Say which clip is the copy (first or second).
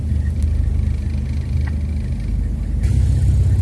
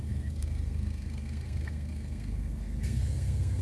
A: second